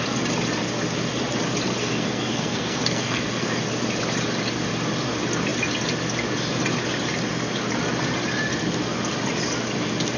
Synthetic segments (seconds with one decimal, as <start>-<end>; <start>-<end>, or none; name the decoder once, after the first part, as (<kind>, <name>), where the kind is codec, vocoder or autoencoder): 1.8-3.6 (codec, SNAC)